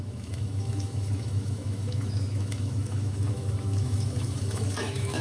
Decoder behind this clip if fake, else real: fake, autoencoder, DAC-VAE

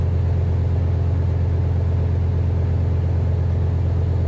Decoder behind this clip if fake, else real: real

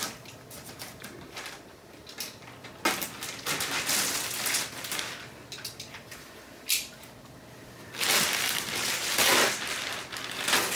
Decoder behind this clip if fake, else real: real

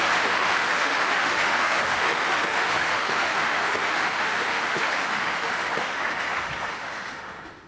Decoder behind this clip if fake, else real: fake, autoencoder, DAC-VAE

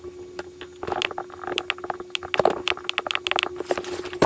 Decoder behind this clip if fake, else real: real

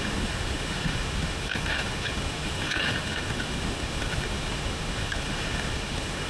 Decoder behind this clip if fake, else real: fake, autoencoder, DAC-VAE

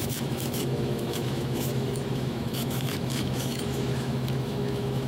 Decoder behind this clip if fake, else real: fake, autoencoder, DAC-VAE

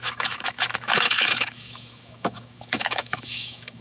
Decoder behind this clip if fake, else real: fake, autoencoder, DAC-VAE